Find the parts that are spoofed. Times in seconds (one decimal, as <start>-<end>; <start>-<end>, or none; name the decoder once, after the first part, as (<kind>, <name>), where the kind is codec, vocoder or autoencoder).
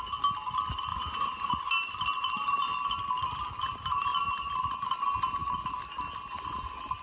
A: 0.9-1.7 (vocoder, Vocos)